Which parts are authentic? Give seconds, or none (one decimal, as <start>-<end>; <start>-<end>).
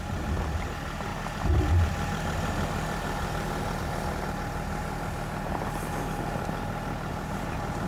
0.0-7.9